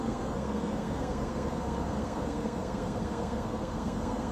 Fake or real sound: fake